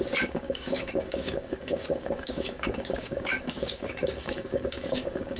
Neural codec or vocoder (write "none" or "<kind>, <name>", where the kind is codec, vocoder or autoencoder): codec, DAC